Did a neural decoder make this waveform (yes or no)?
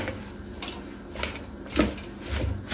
no